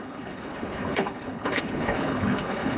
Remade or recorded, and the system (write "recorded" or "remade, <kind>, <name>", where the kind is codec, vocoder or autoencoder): remade, codec, HILCodec